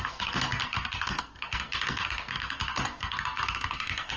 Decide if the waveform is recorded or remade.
remade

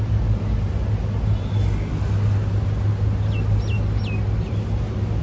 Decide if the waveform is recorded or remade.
recorded